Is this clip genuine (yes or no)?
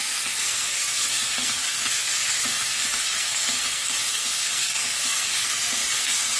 no